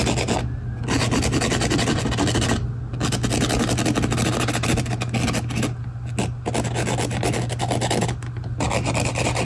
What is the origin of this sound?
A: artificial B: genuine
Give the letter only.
B